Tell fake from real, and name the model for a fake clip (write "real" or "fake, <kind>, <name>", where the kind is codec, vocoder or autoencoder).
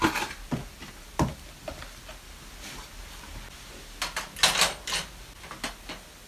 real